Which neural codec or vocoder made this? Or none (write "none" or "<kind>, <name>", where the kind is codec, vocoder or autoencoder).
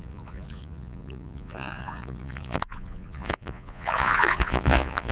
vocoder, Vocos